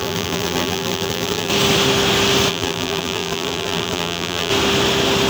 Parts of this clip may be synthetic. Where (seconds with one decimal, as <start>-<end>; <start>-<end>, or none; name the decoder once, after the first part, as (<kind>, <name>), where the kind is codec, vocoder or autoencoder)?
0.0-1.5 (vocoder, BigVGAN v2); 2.5-4.5